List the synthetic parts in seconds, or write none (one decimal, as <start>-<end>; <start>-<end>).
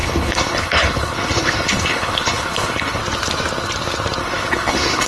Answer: 0.0-3.0; 4.2-5.1